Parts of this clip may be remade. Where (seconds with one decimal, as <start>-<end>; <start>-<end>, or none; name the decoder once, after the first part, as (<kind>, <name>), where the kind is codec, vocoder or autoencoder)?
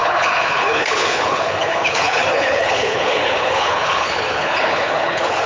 0.0-5.5 (codec, HILCodec)